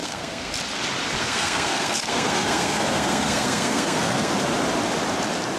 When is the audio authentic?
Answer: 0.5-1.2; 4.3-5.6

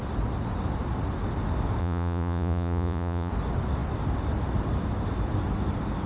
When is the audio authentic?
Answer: 0.0-1.8; 3.3-6.1

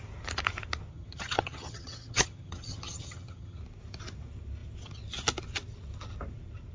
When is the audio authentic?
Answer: 0.0-0.9; 3.6-6.7

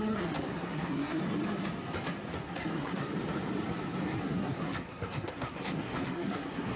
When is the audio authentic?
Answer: 1.2-2.4; 3.1-4.2

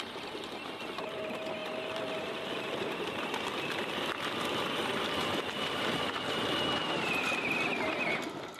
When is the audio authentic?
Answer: 0.0-1.6; 6.2-6.8; 7.5-8.6

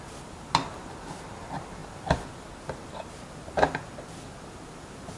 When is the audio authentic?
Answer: 0.0-5.2

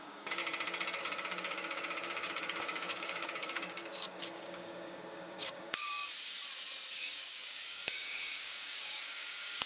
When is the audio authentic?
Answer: 0.4-1.0; 6.1-6.9